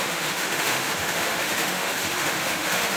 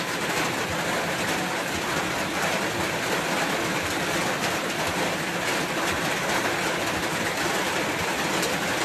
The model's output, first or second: first